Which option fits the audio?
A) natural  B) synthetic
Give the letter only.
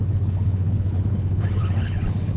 B